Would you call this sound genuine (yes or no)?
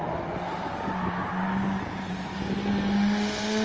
yes